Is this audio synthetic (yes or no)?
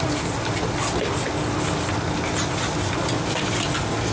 no